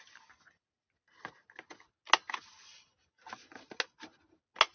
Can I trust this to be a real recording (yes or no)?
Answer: yes